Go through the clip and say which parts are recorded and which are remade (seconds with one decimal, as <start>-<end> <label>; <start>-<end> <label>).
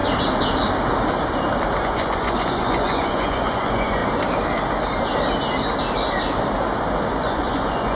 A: 0.0-1.8 recorded; 1.8-4.0 remade; 4.0-7.1 recorded; 7.1-7.9 remade